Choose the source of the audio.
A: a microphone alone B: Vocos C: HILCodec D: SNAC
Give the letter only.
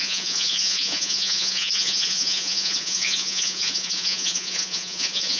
B